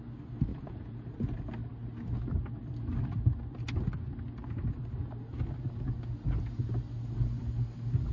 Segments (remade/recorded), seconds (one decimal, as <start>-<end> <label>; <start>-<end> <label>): 0.0-0.5 recorded; 0.5-1.1 remade; 1.1-8.1 recorded